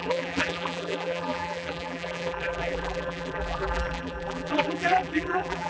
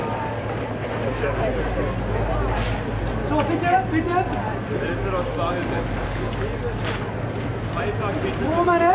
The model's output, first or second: first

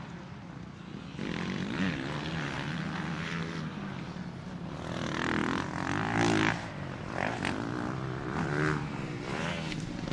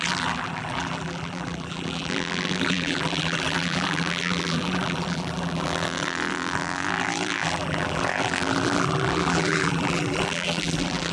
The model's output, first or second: second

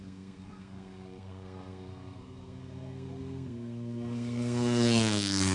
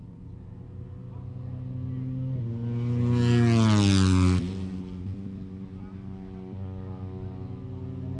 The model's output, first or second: first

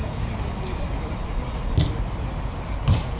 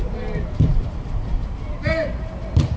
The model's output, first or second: second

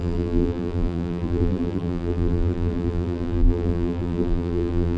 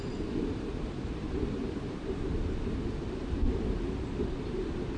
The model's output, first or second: first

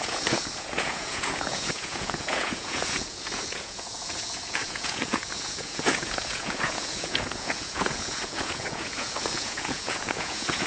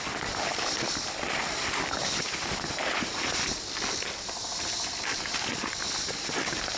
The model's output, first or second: first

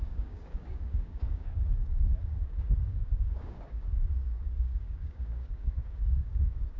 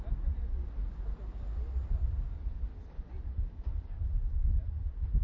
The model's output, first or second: first